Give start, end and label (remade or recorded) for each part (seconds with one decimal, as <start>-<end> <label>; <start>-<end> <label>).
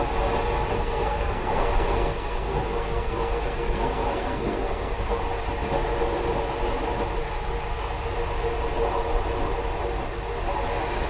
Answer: 0.0-0.7 recorded; 0.7-5.2 remade; 5.2-11.1 recorded